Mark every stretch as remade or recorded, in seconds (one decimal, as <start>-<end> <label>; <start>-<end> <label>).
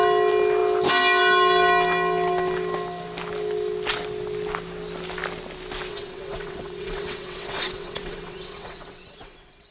0.0-5.9 recorded; 5.9-9.7 remade